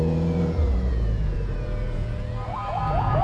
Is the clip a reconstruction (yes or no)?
yes